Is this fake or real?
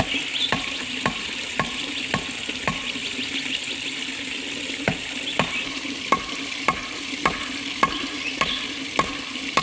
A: real